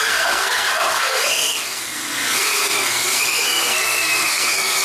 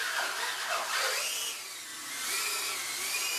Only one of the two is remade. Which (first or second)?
first